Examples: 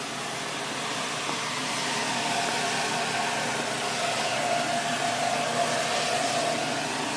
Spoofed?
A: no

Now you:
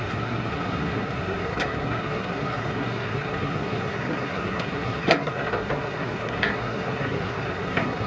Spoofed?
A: yes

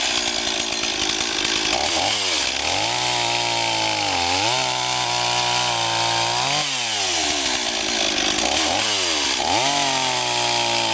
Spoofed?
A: no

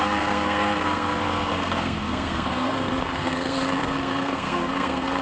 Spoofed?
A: yes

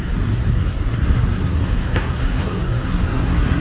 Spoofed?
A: yes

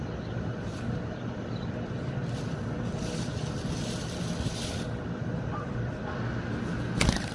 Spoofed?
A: no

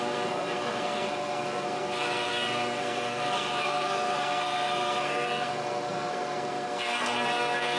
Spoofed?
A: yes